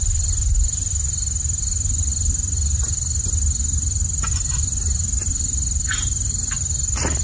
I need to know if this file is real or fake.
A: real